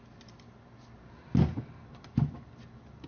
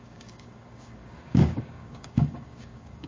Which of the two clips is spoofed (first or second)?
second